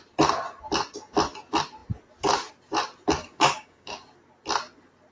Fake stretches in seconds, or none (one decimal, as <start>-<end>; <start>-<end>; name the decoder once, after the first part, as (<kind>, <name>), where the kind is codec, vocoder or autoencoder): 3.2-4.1 (codec, DAC)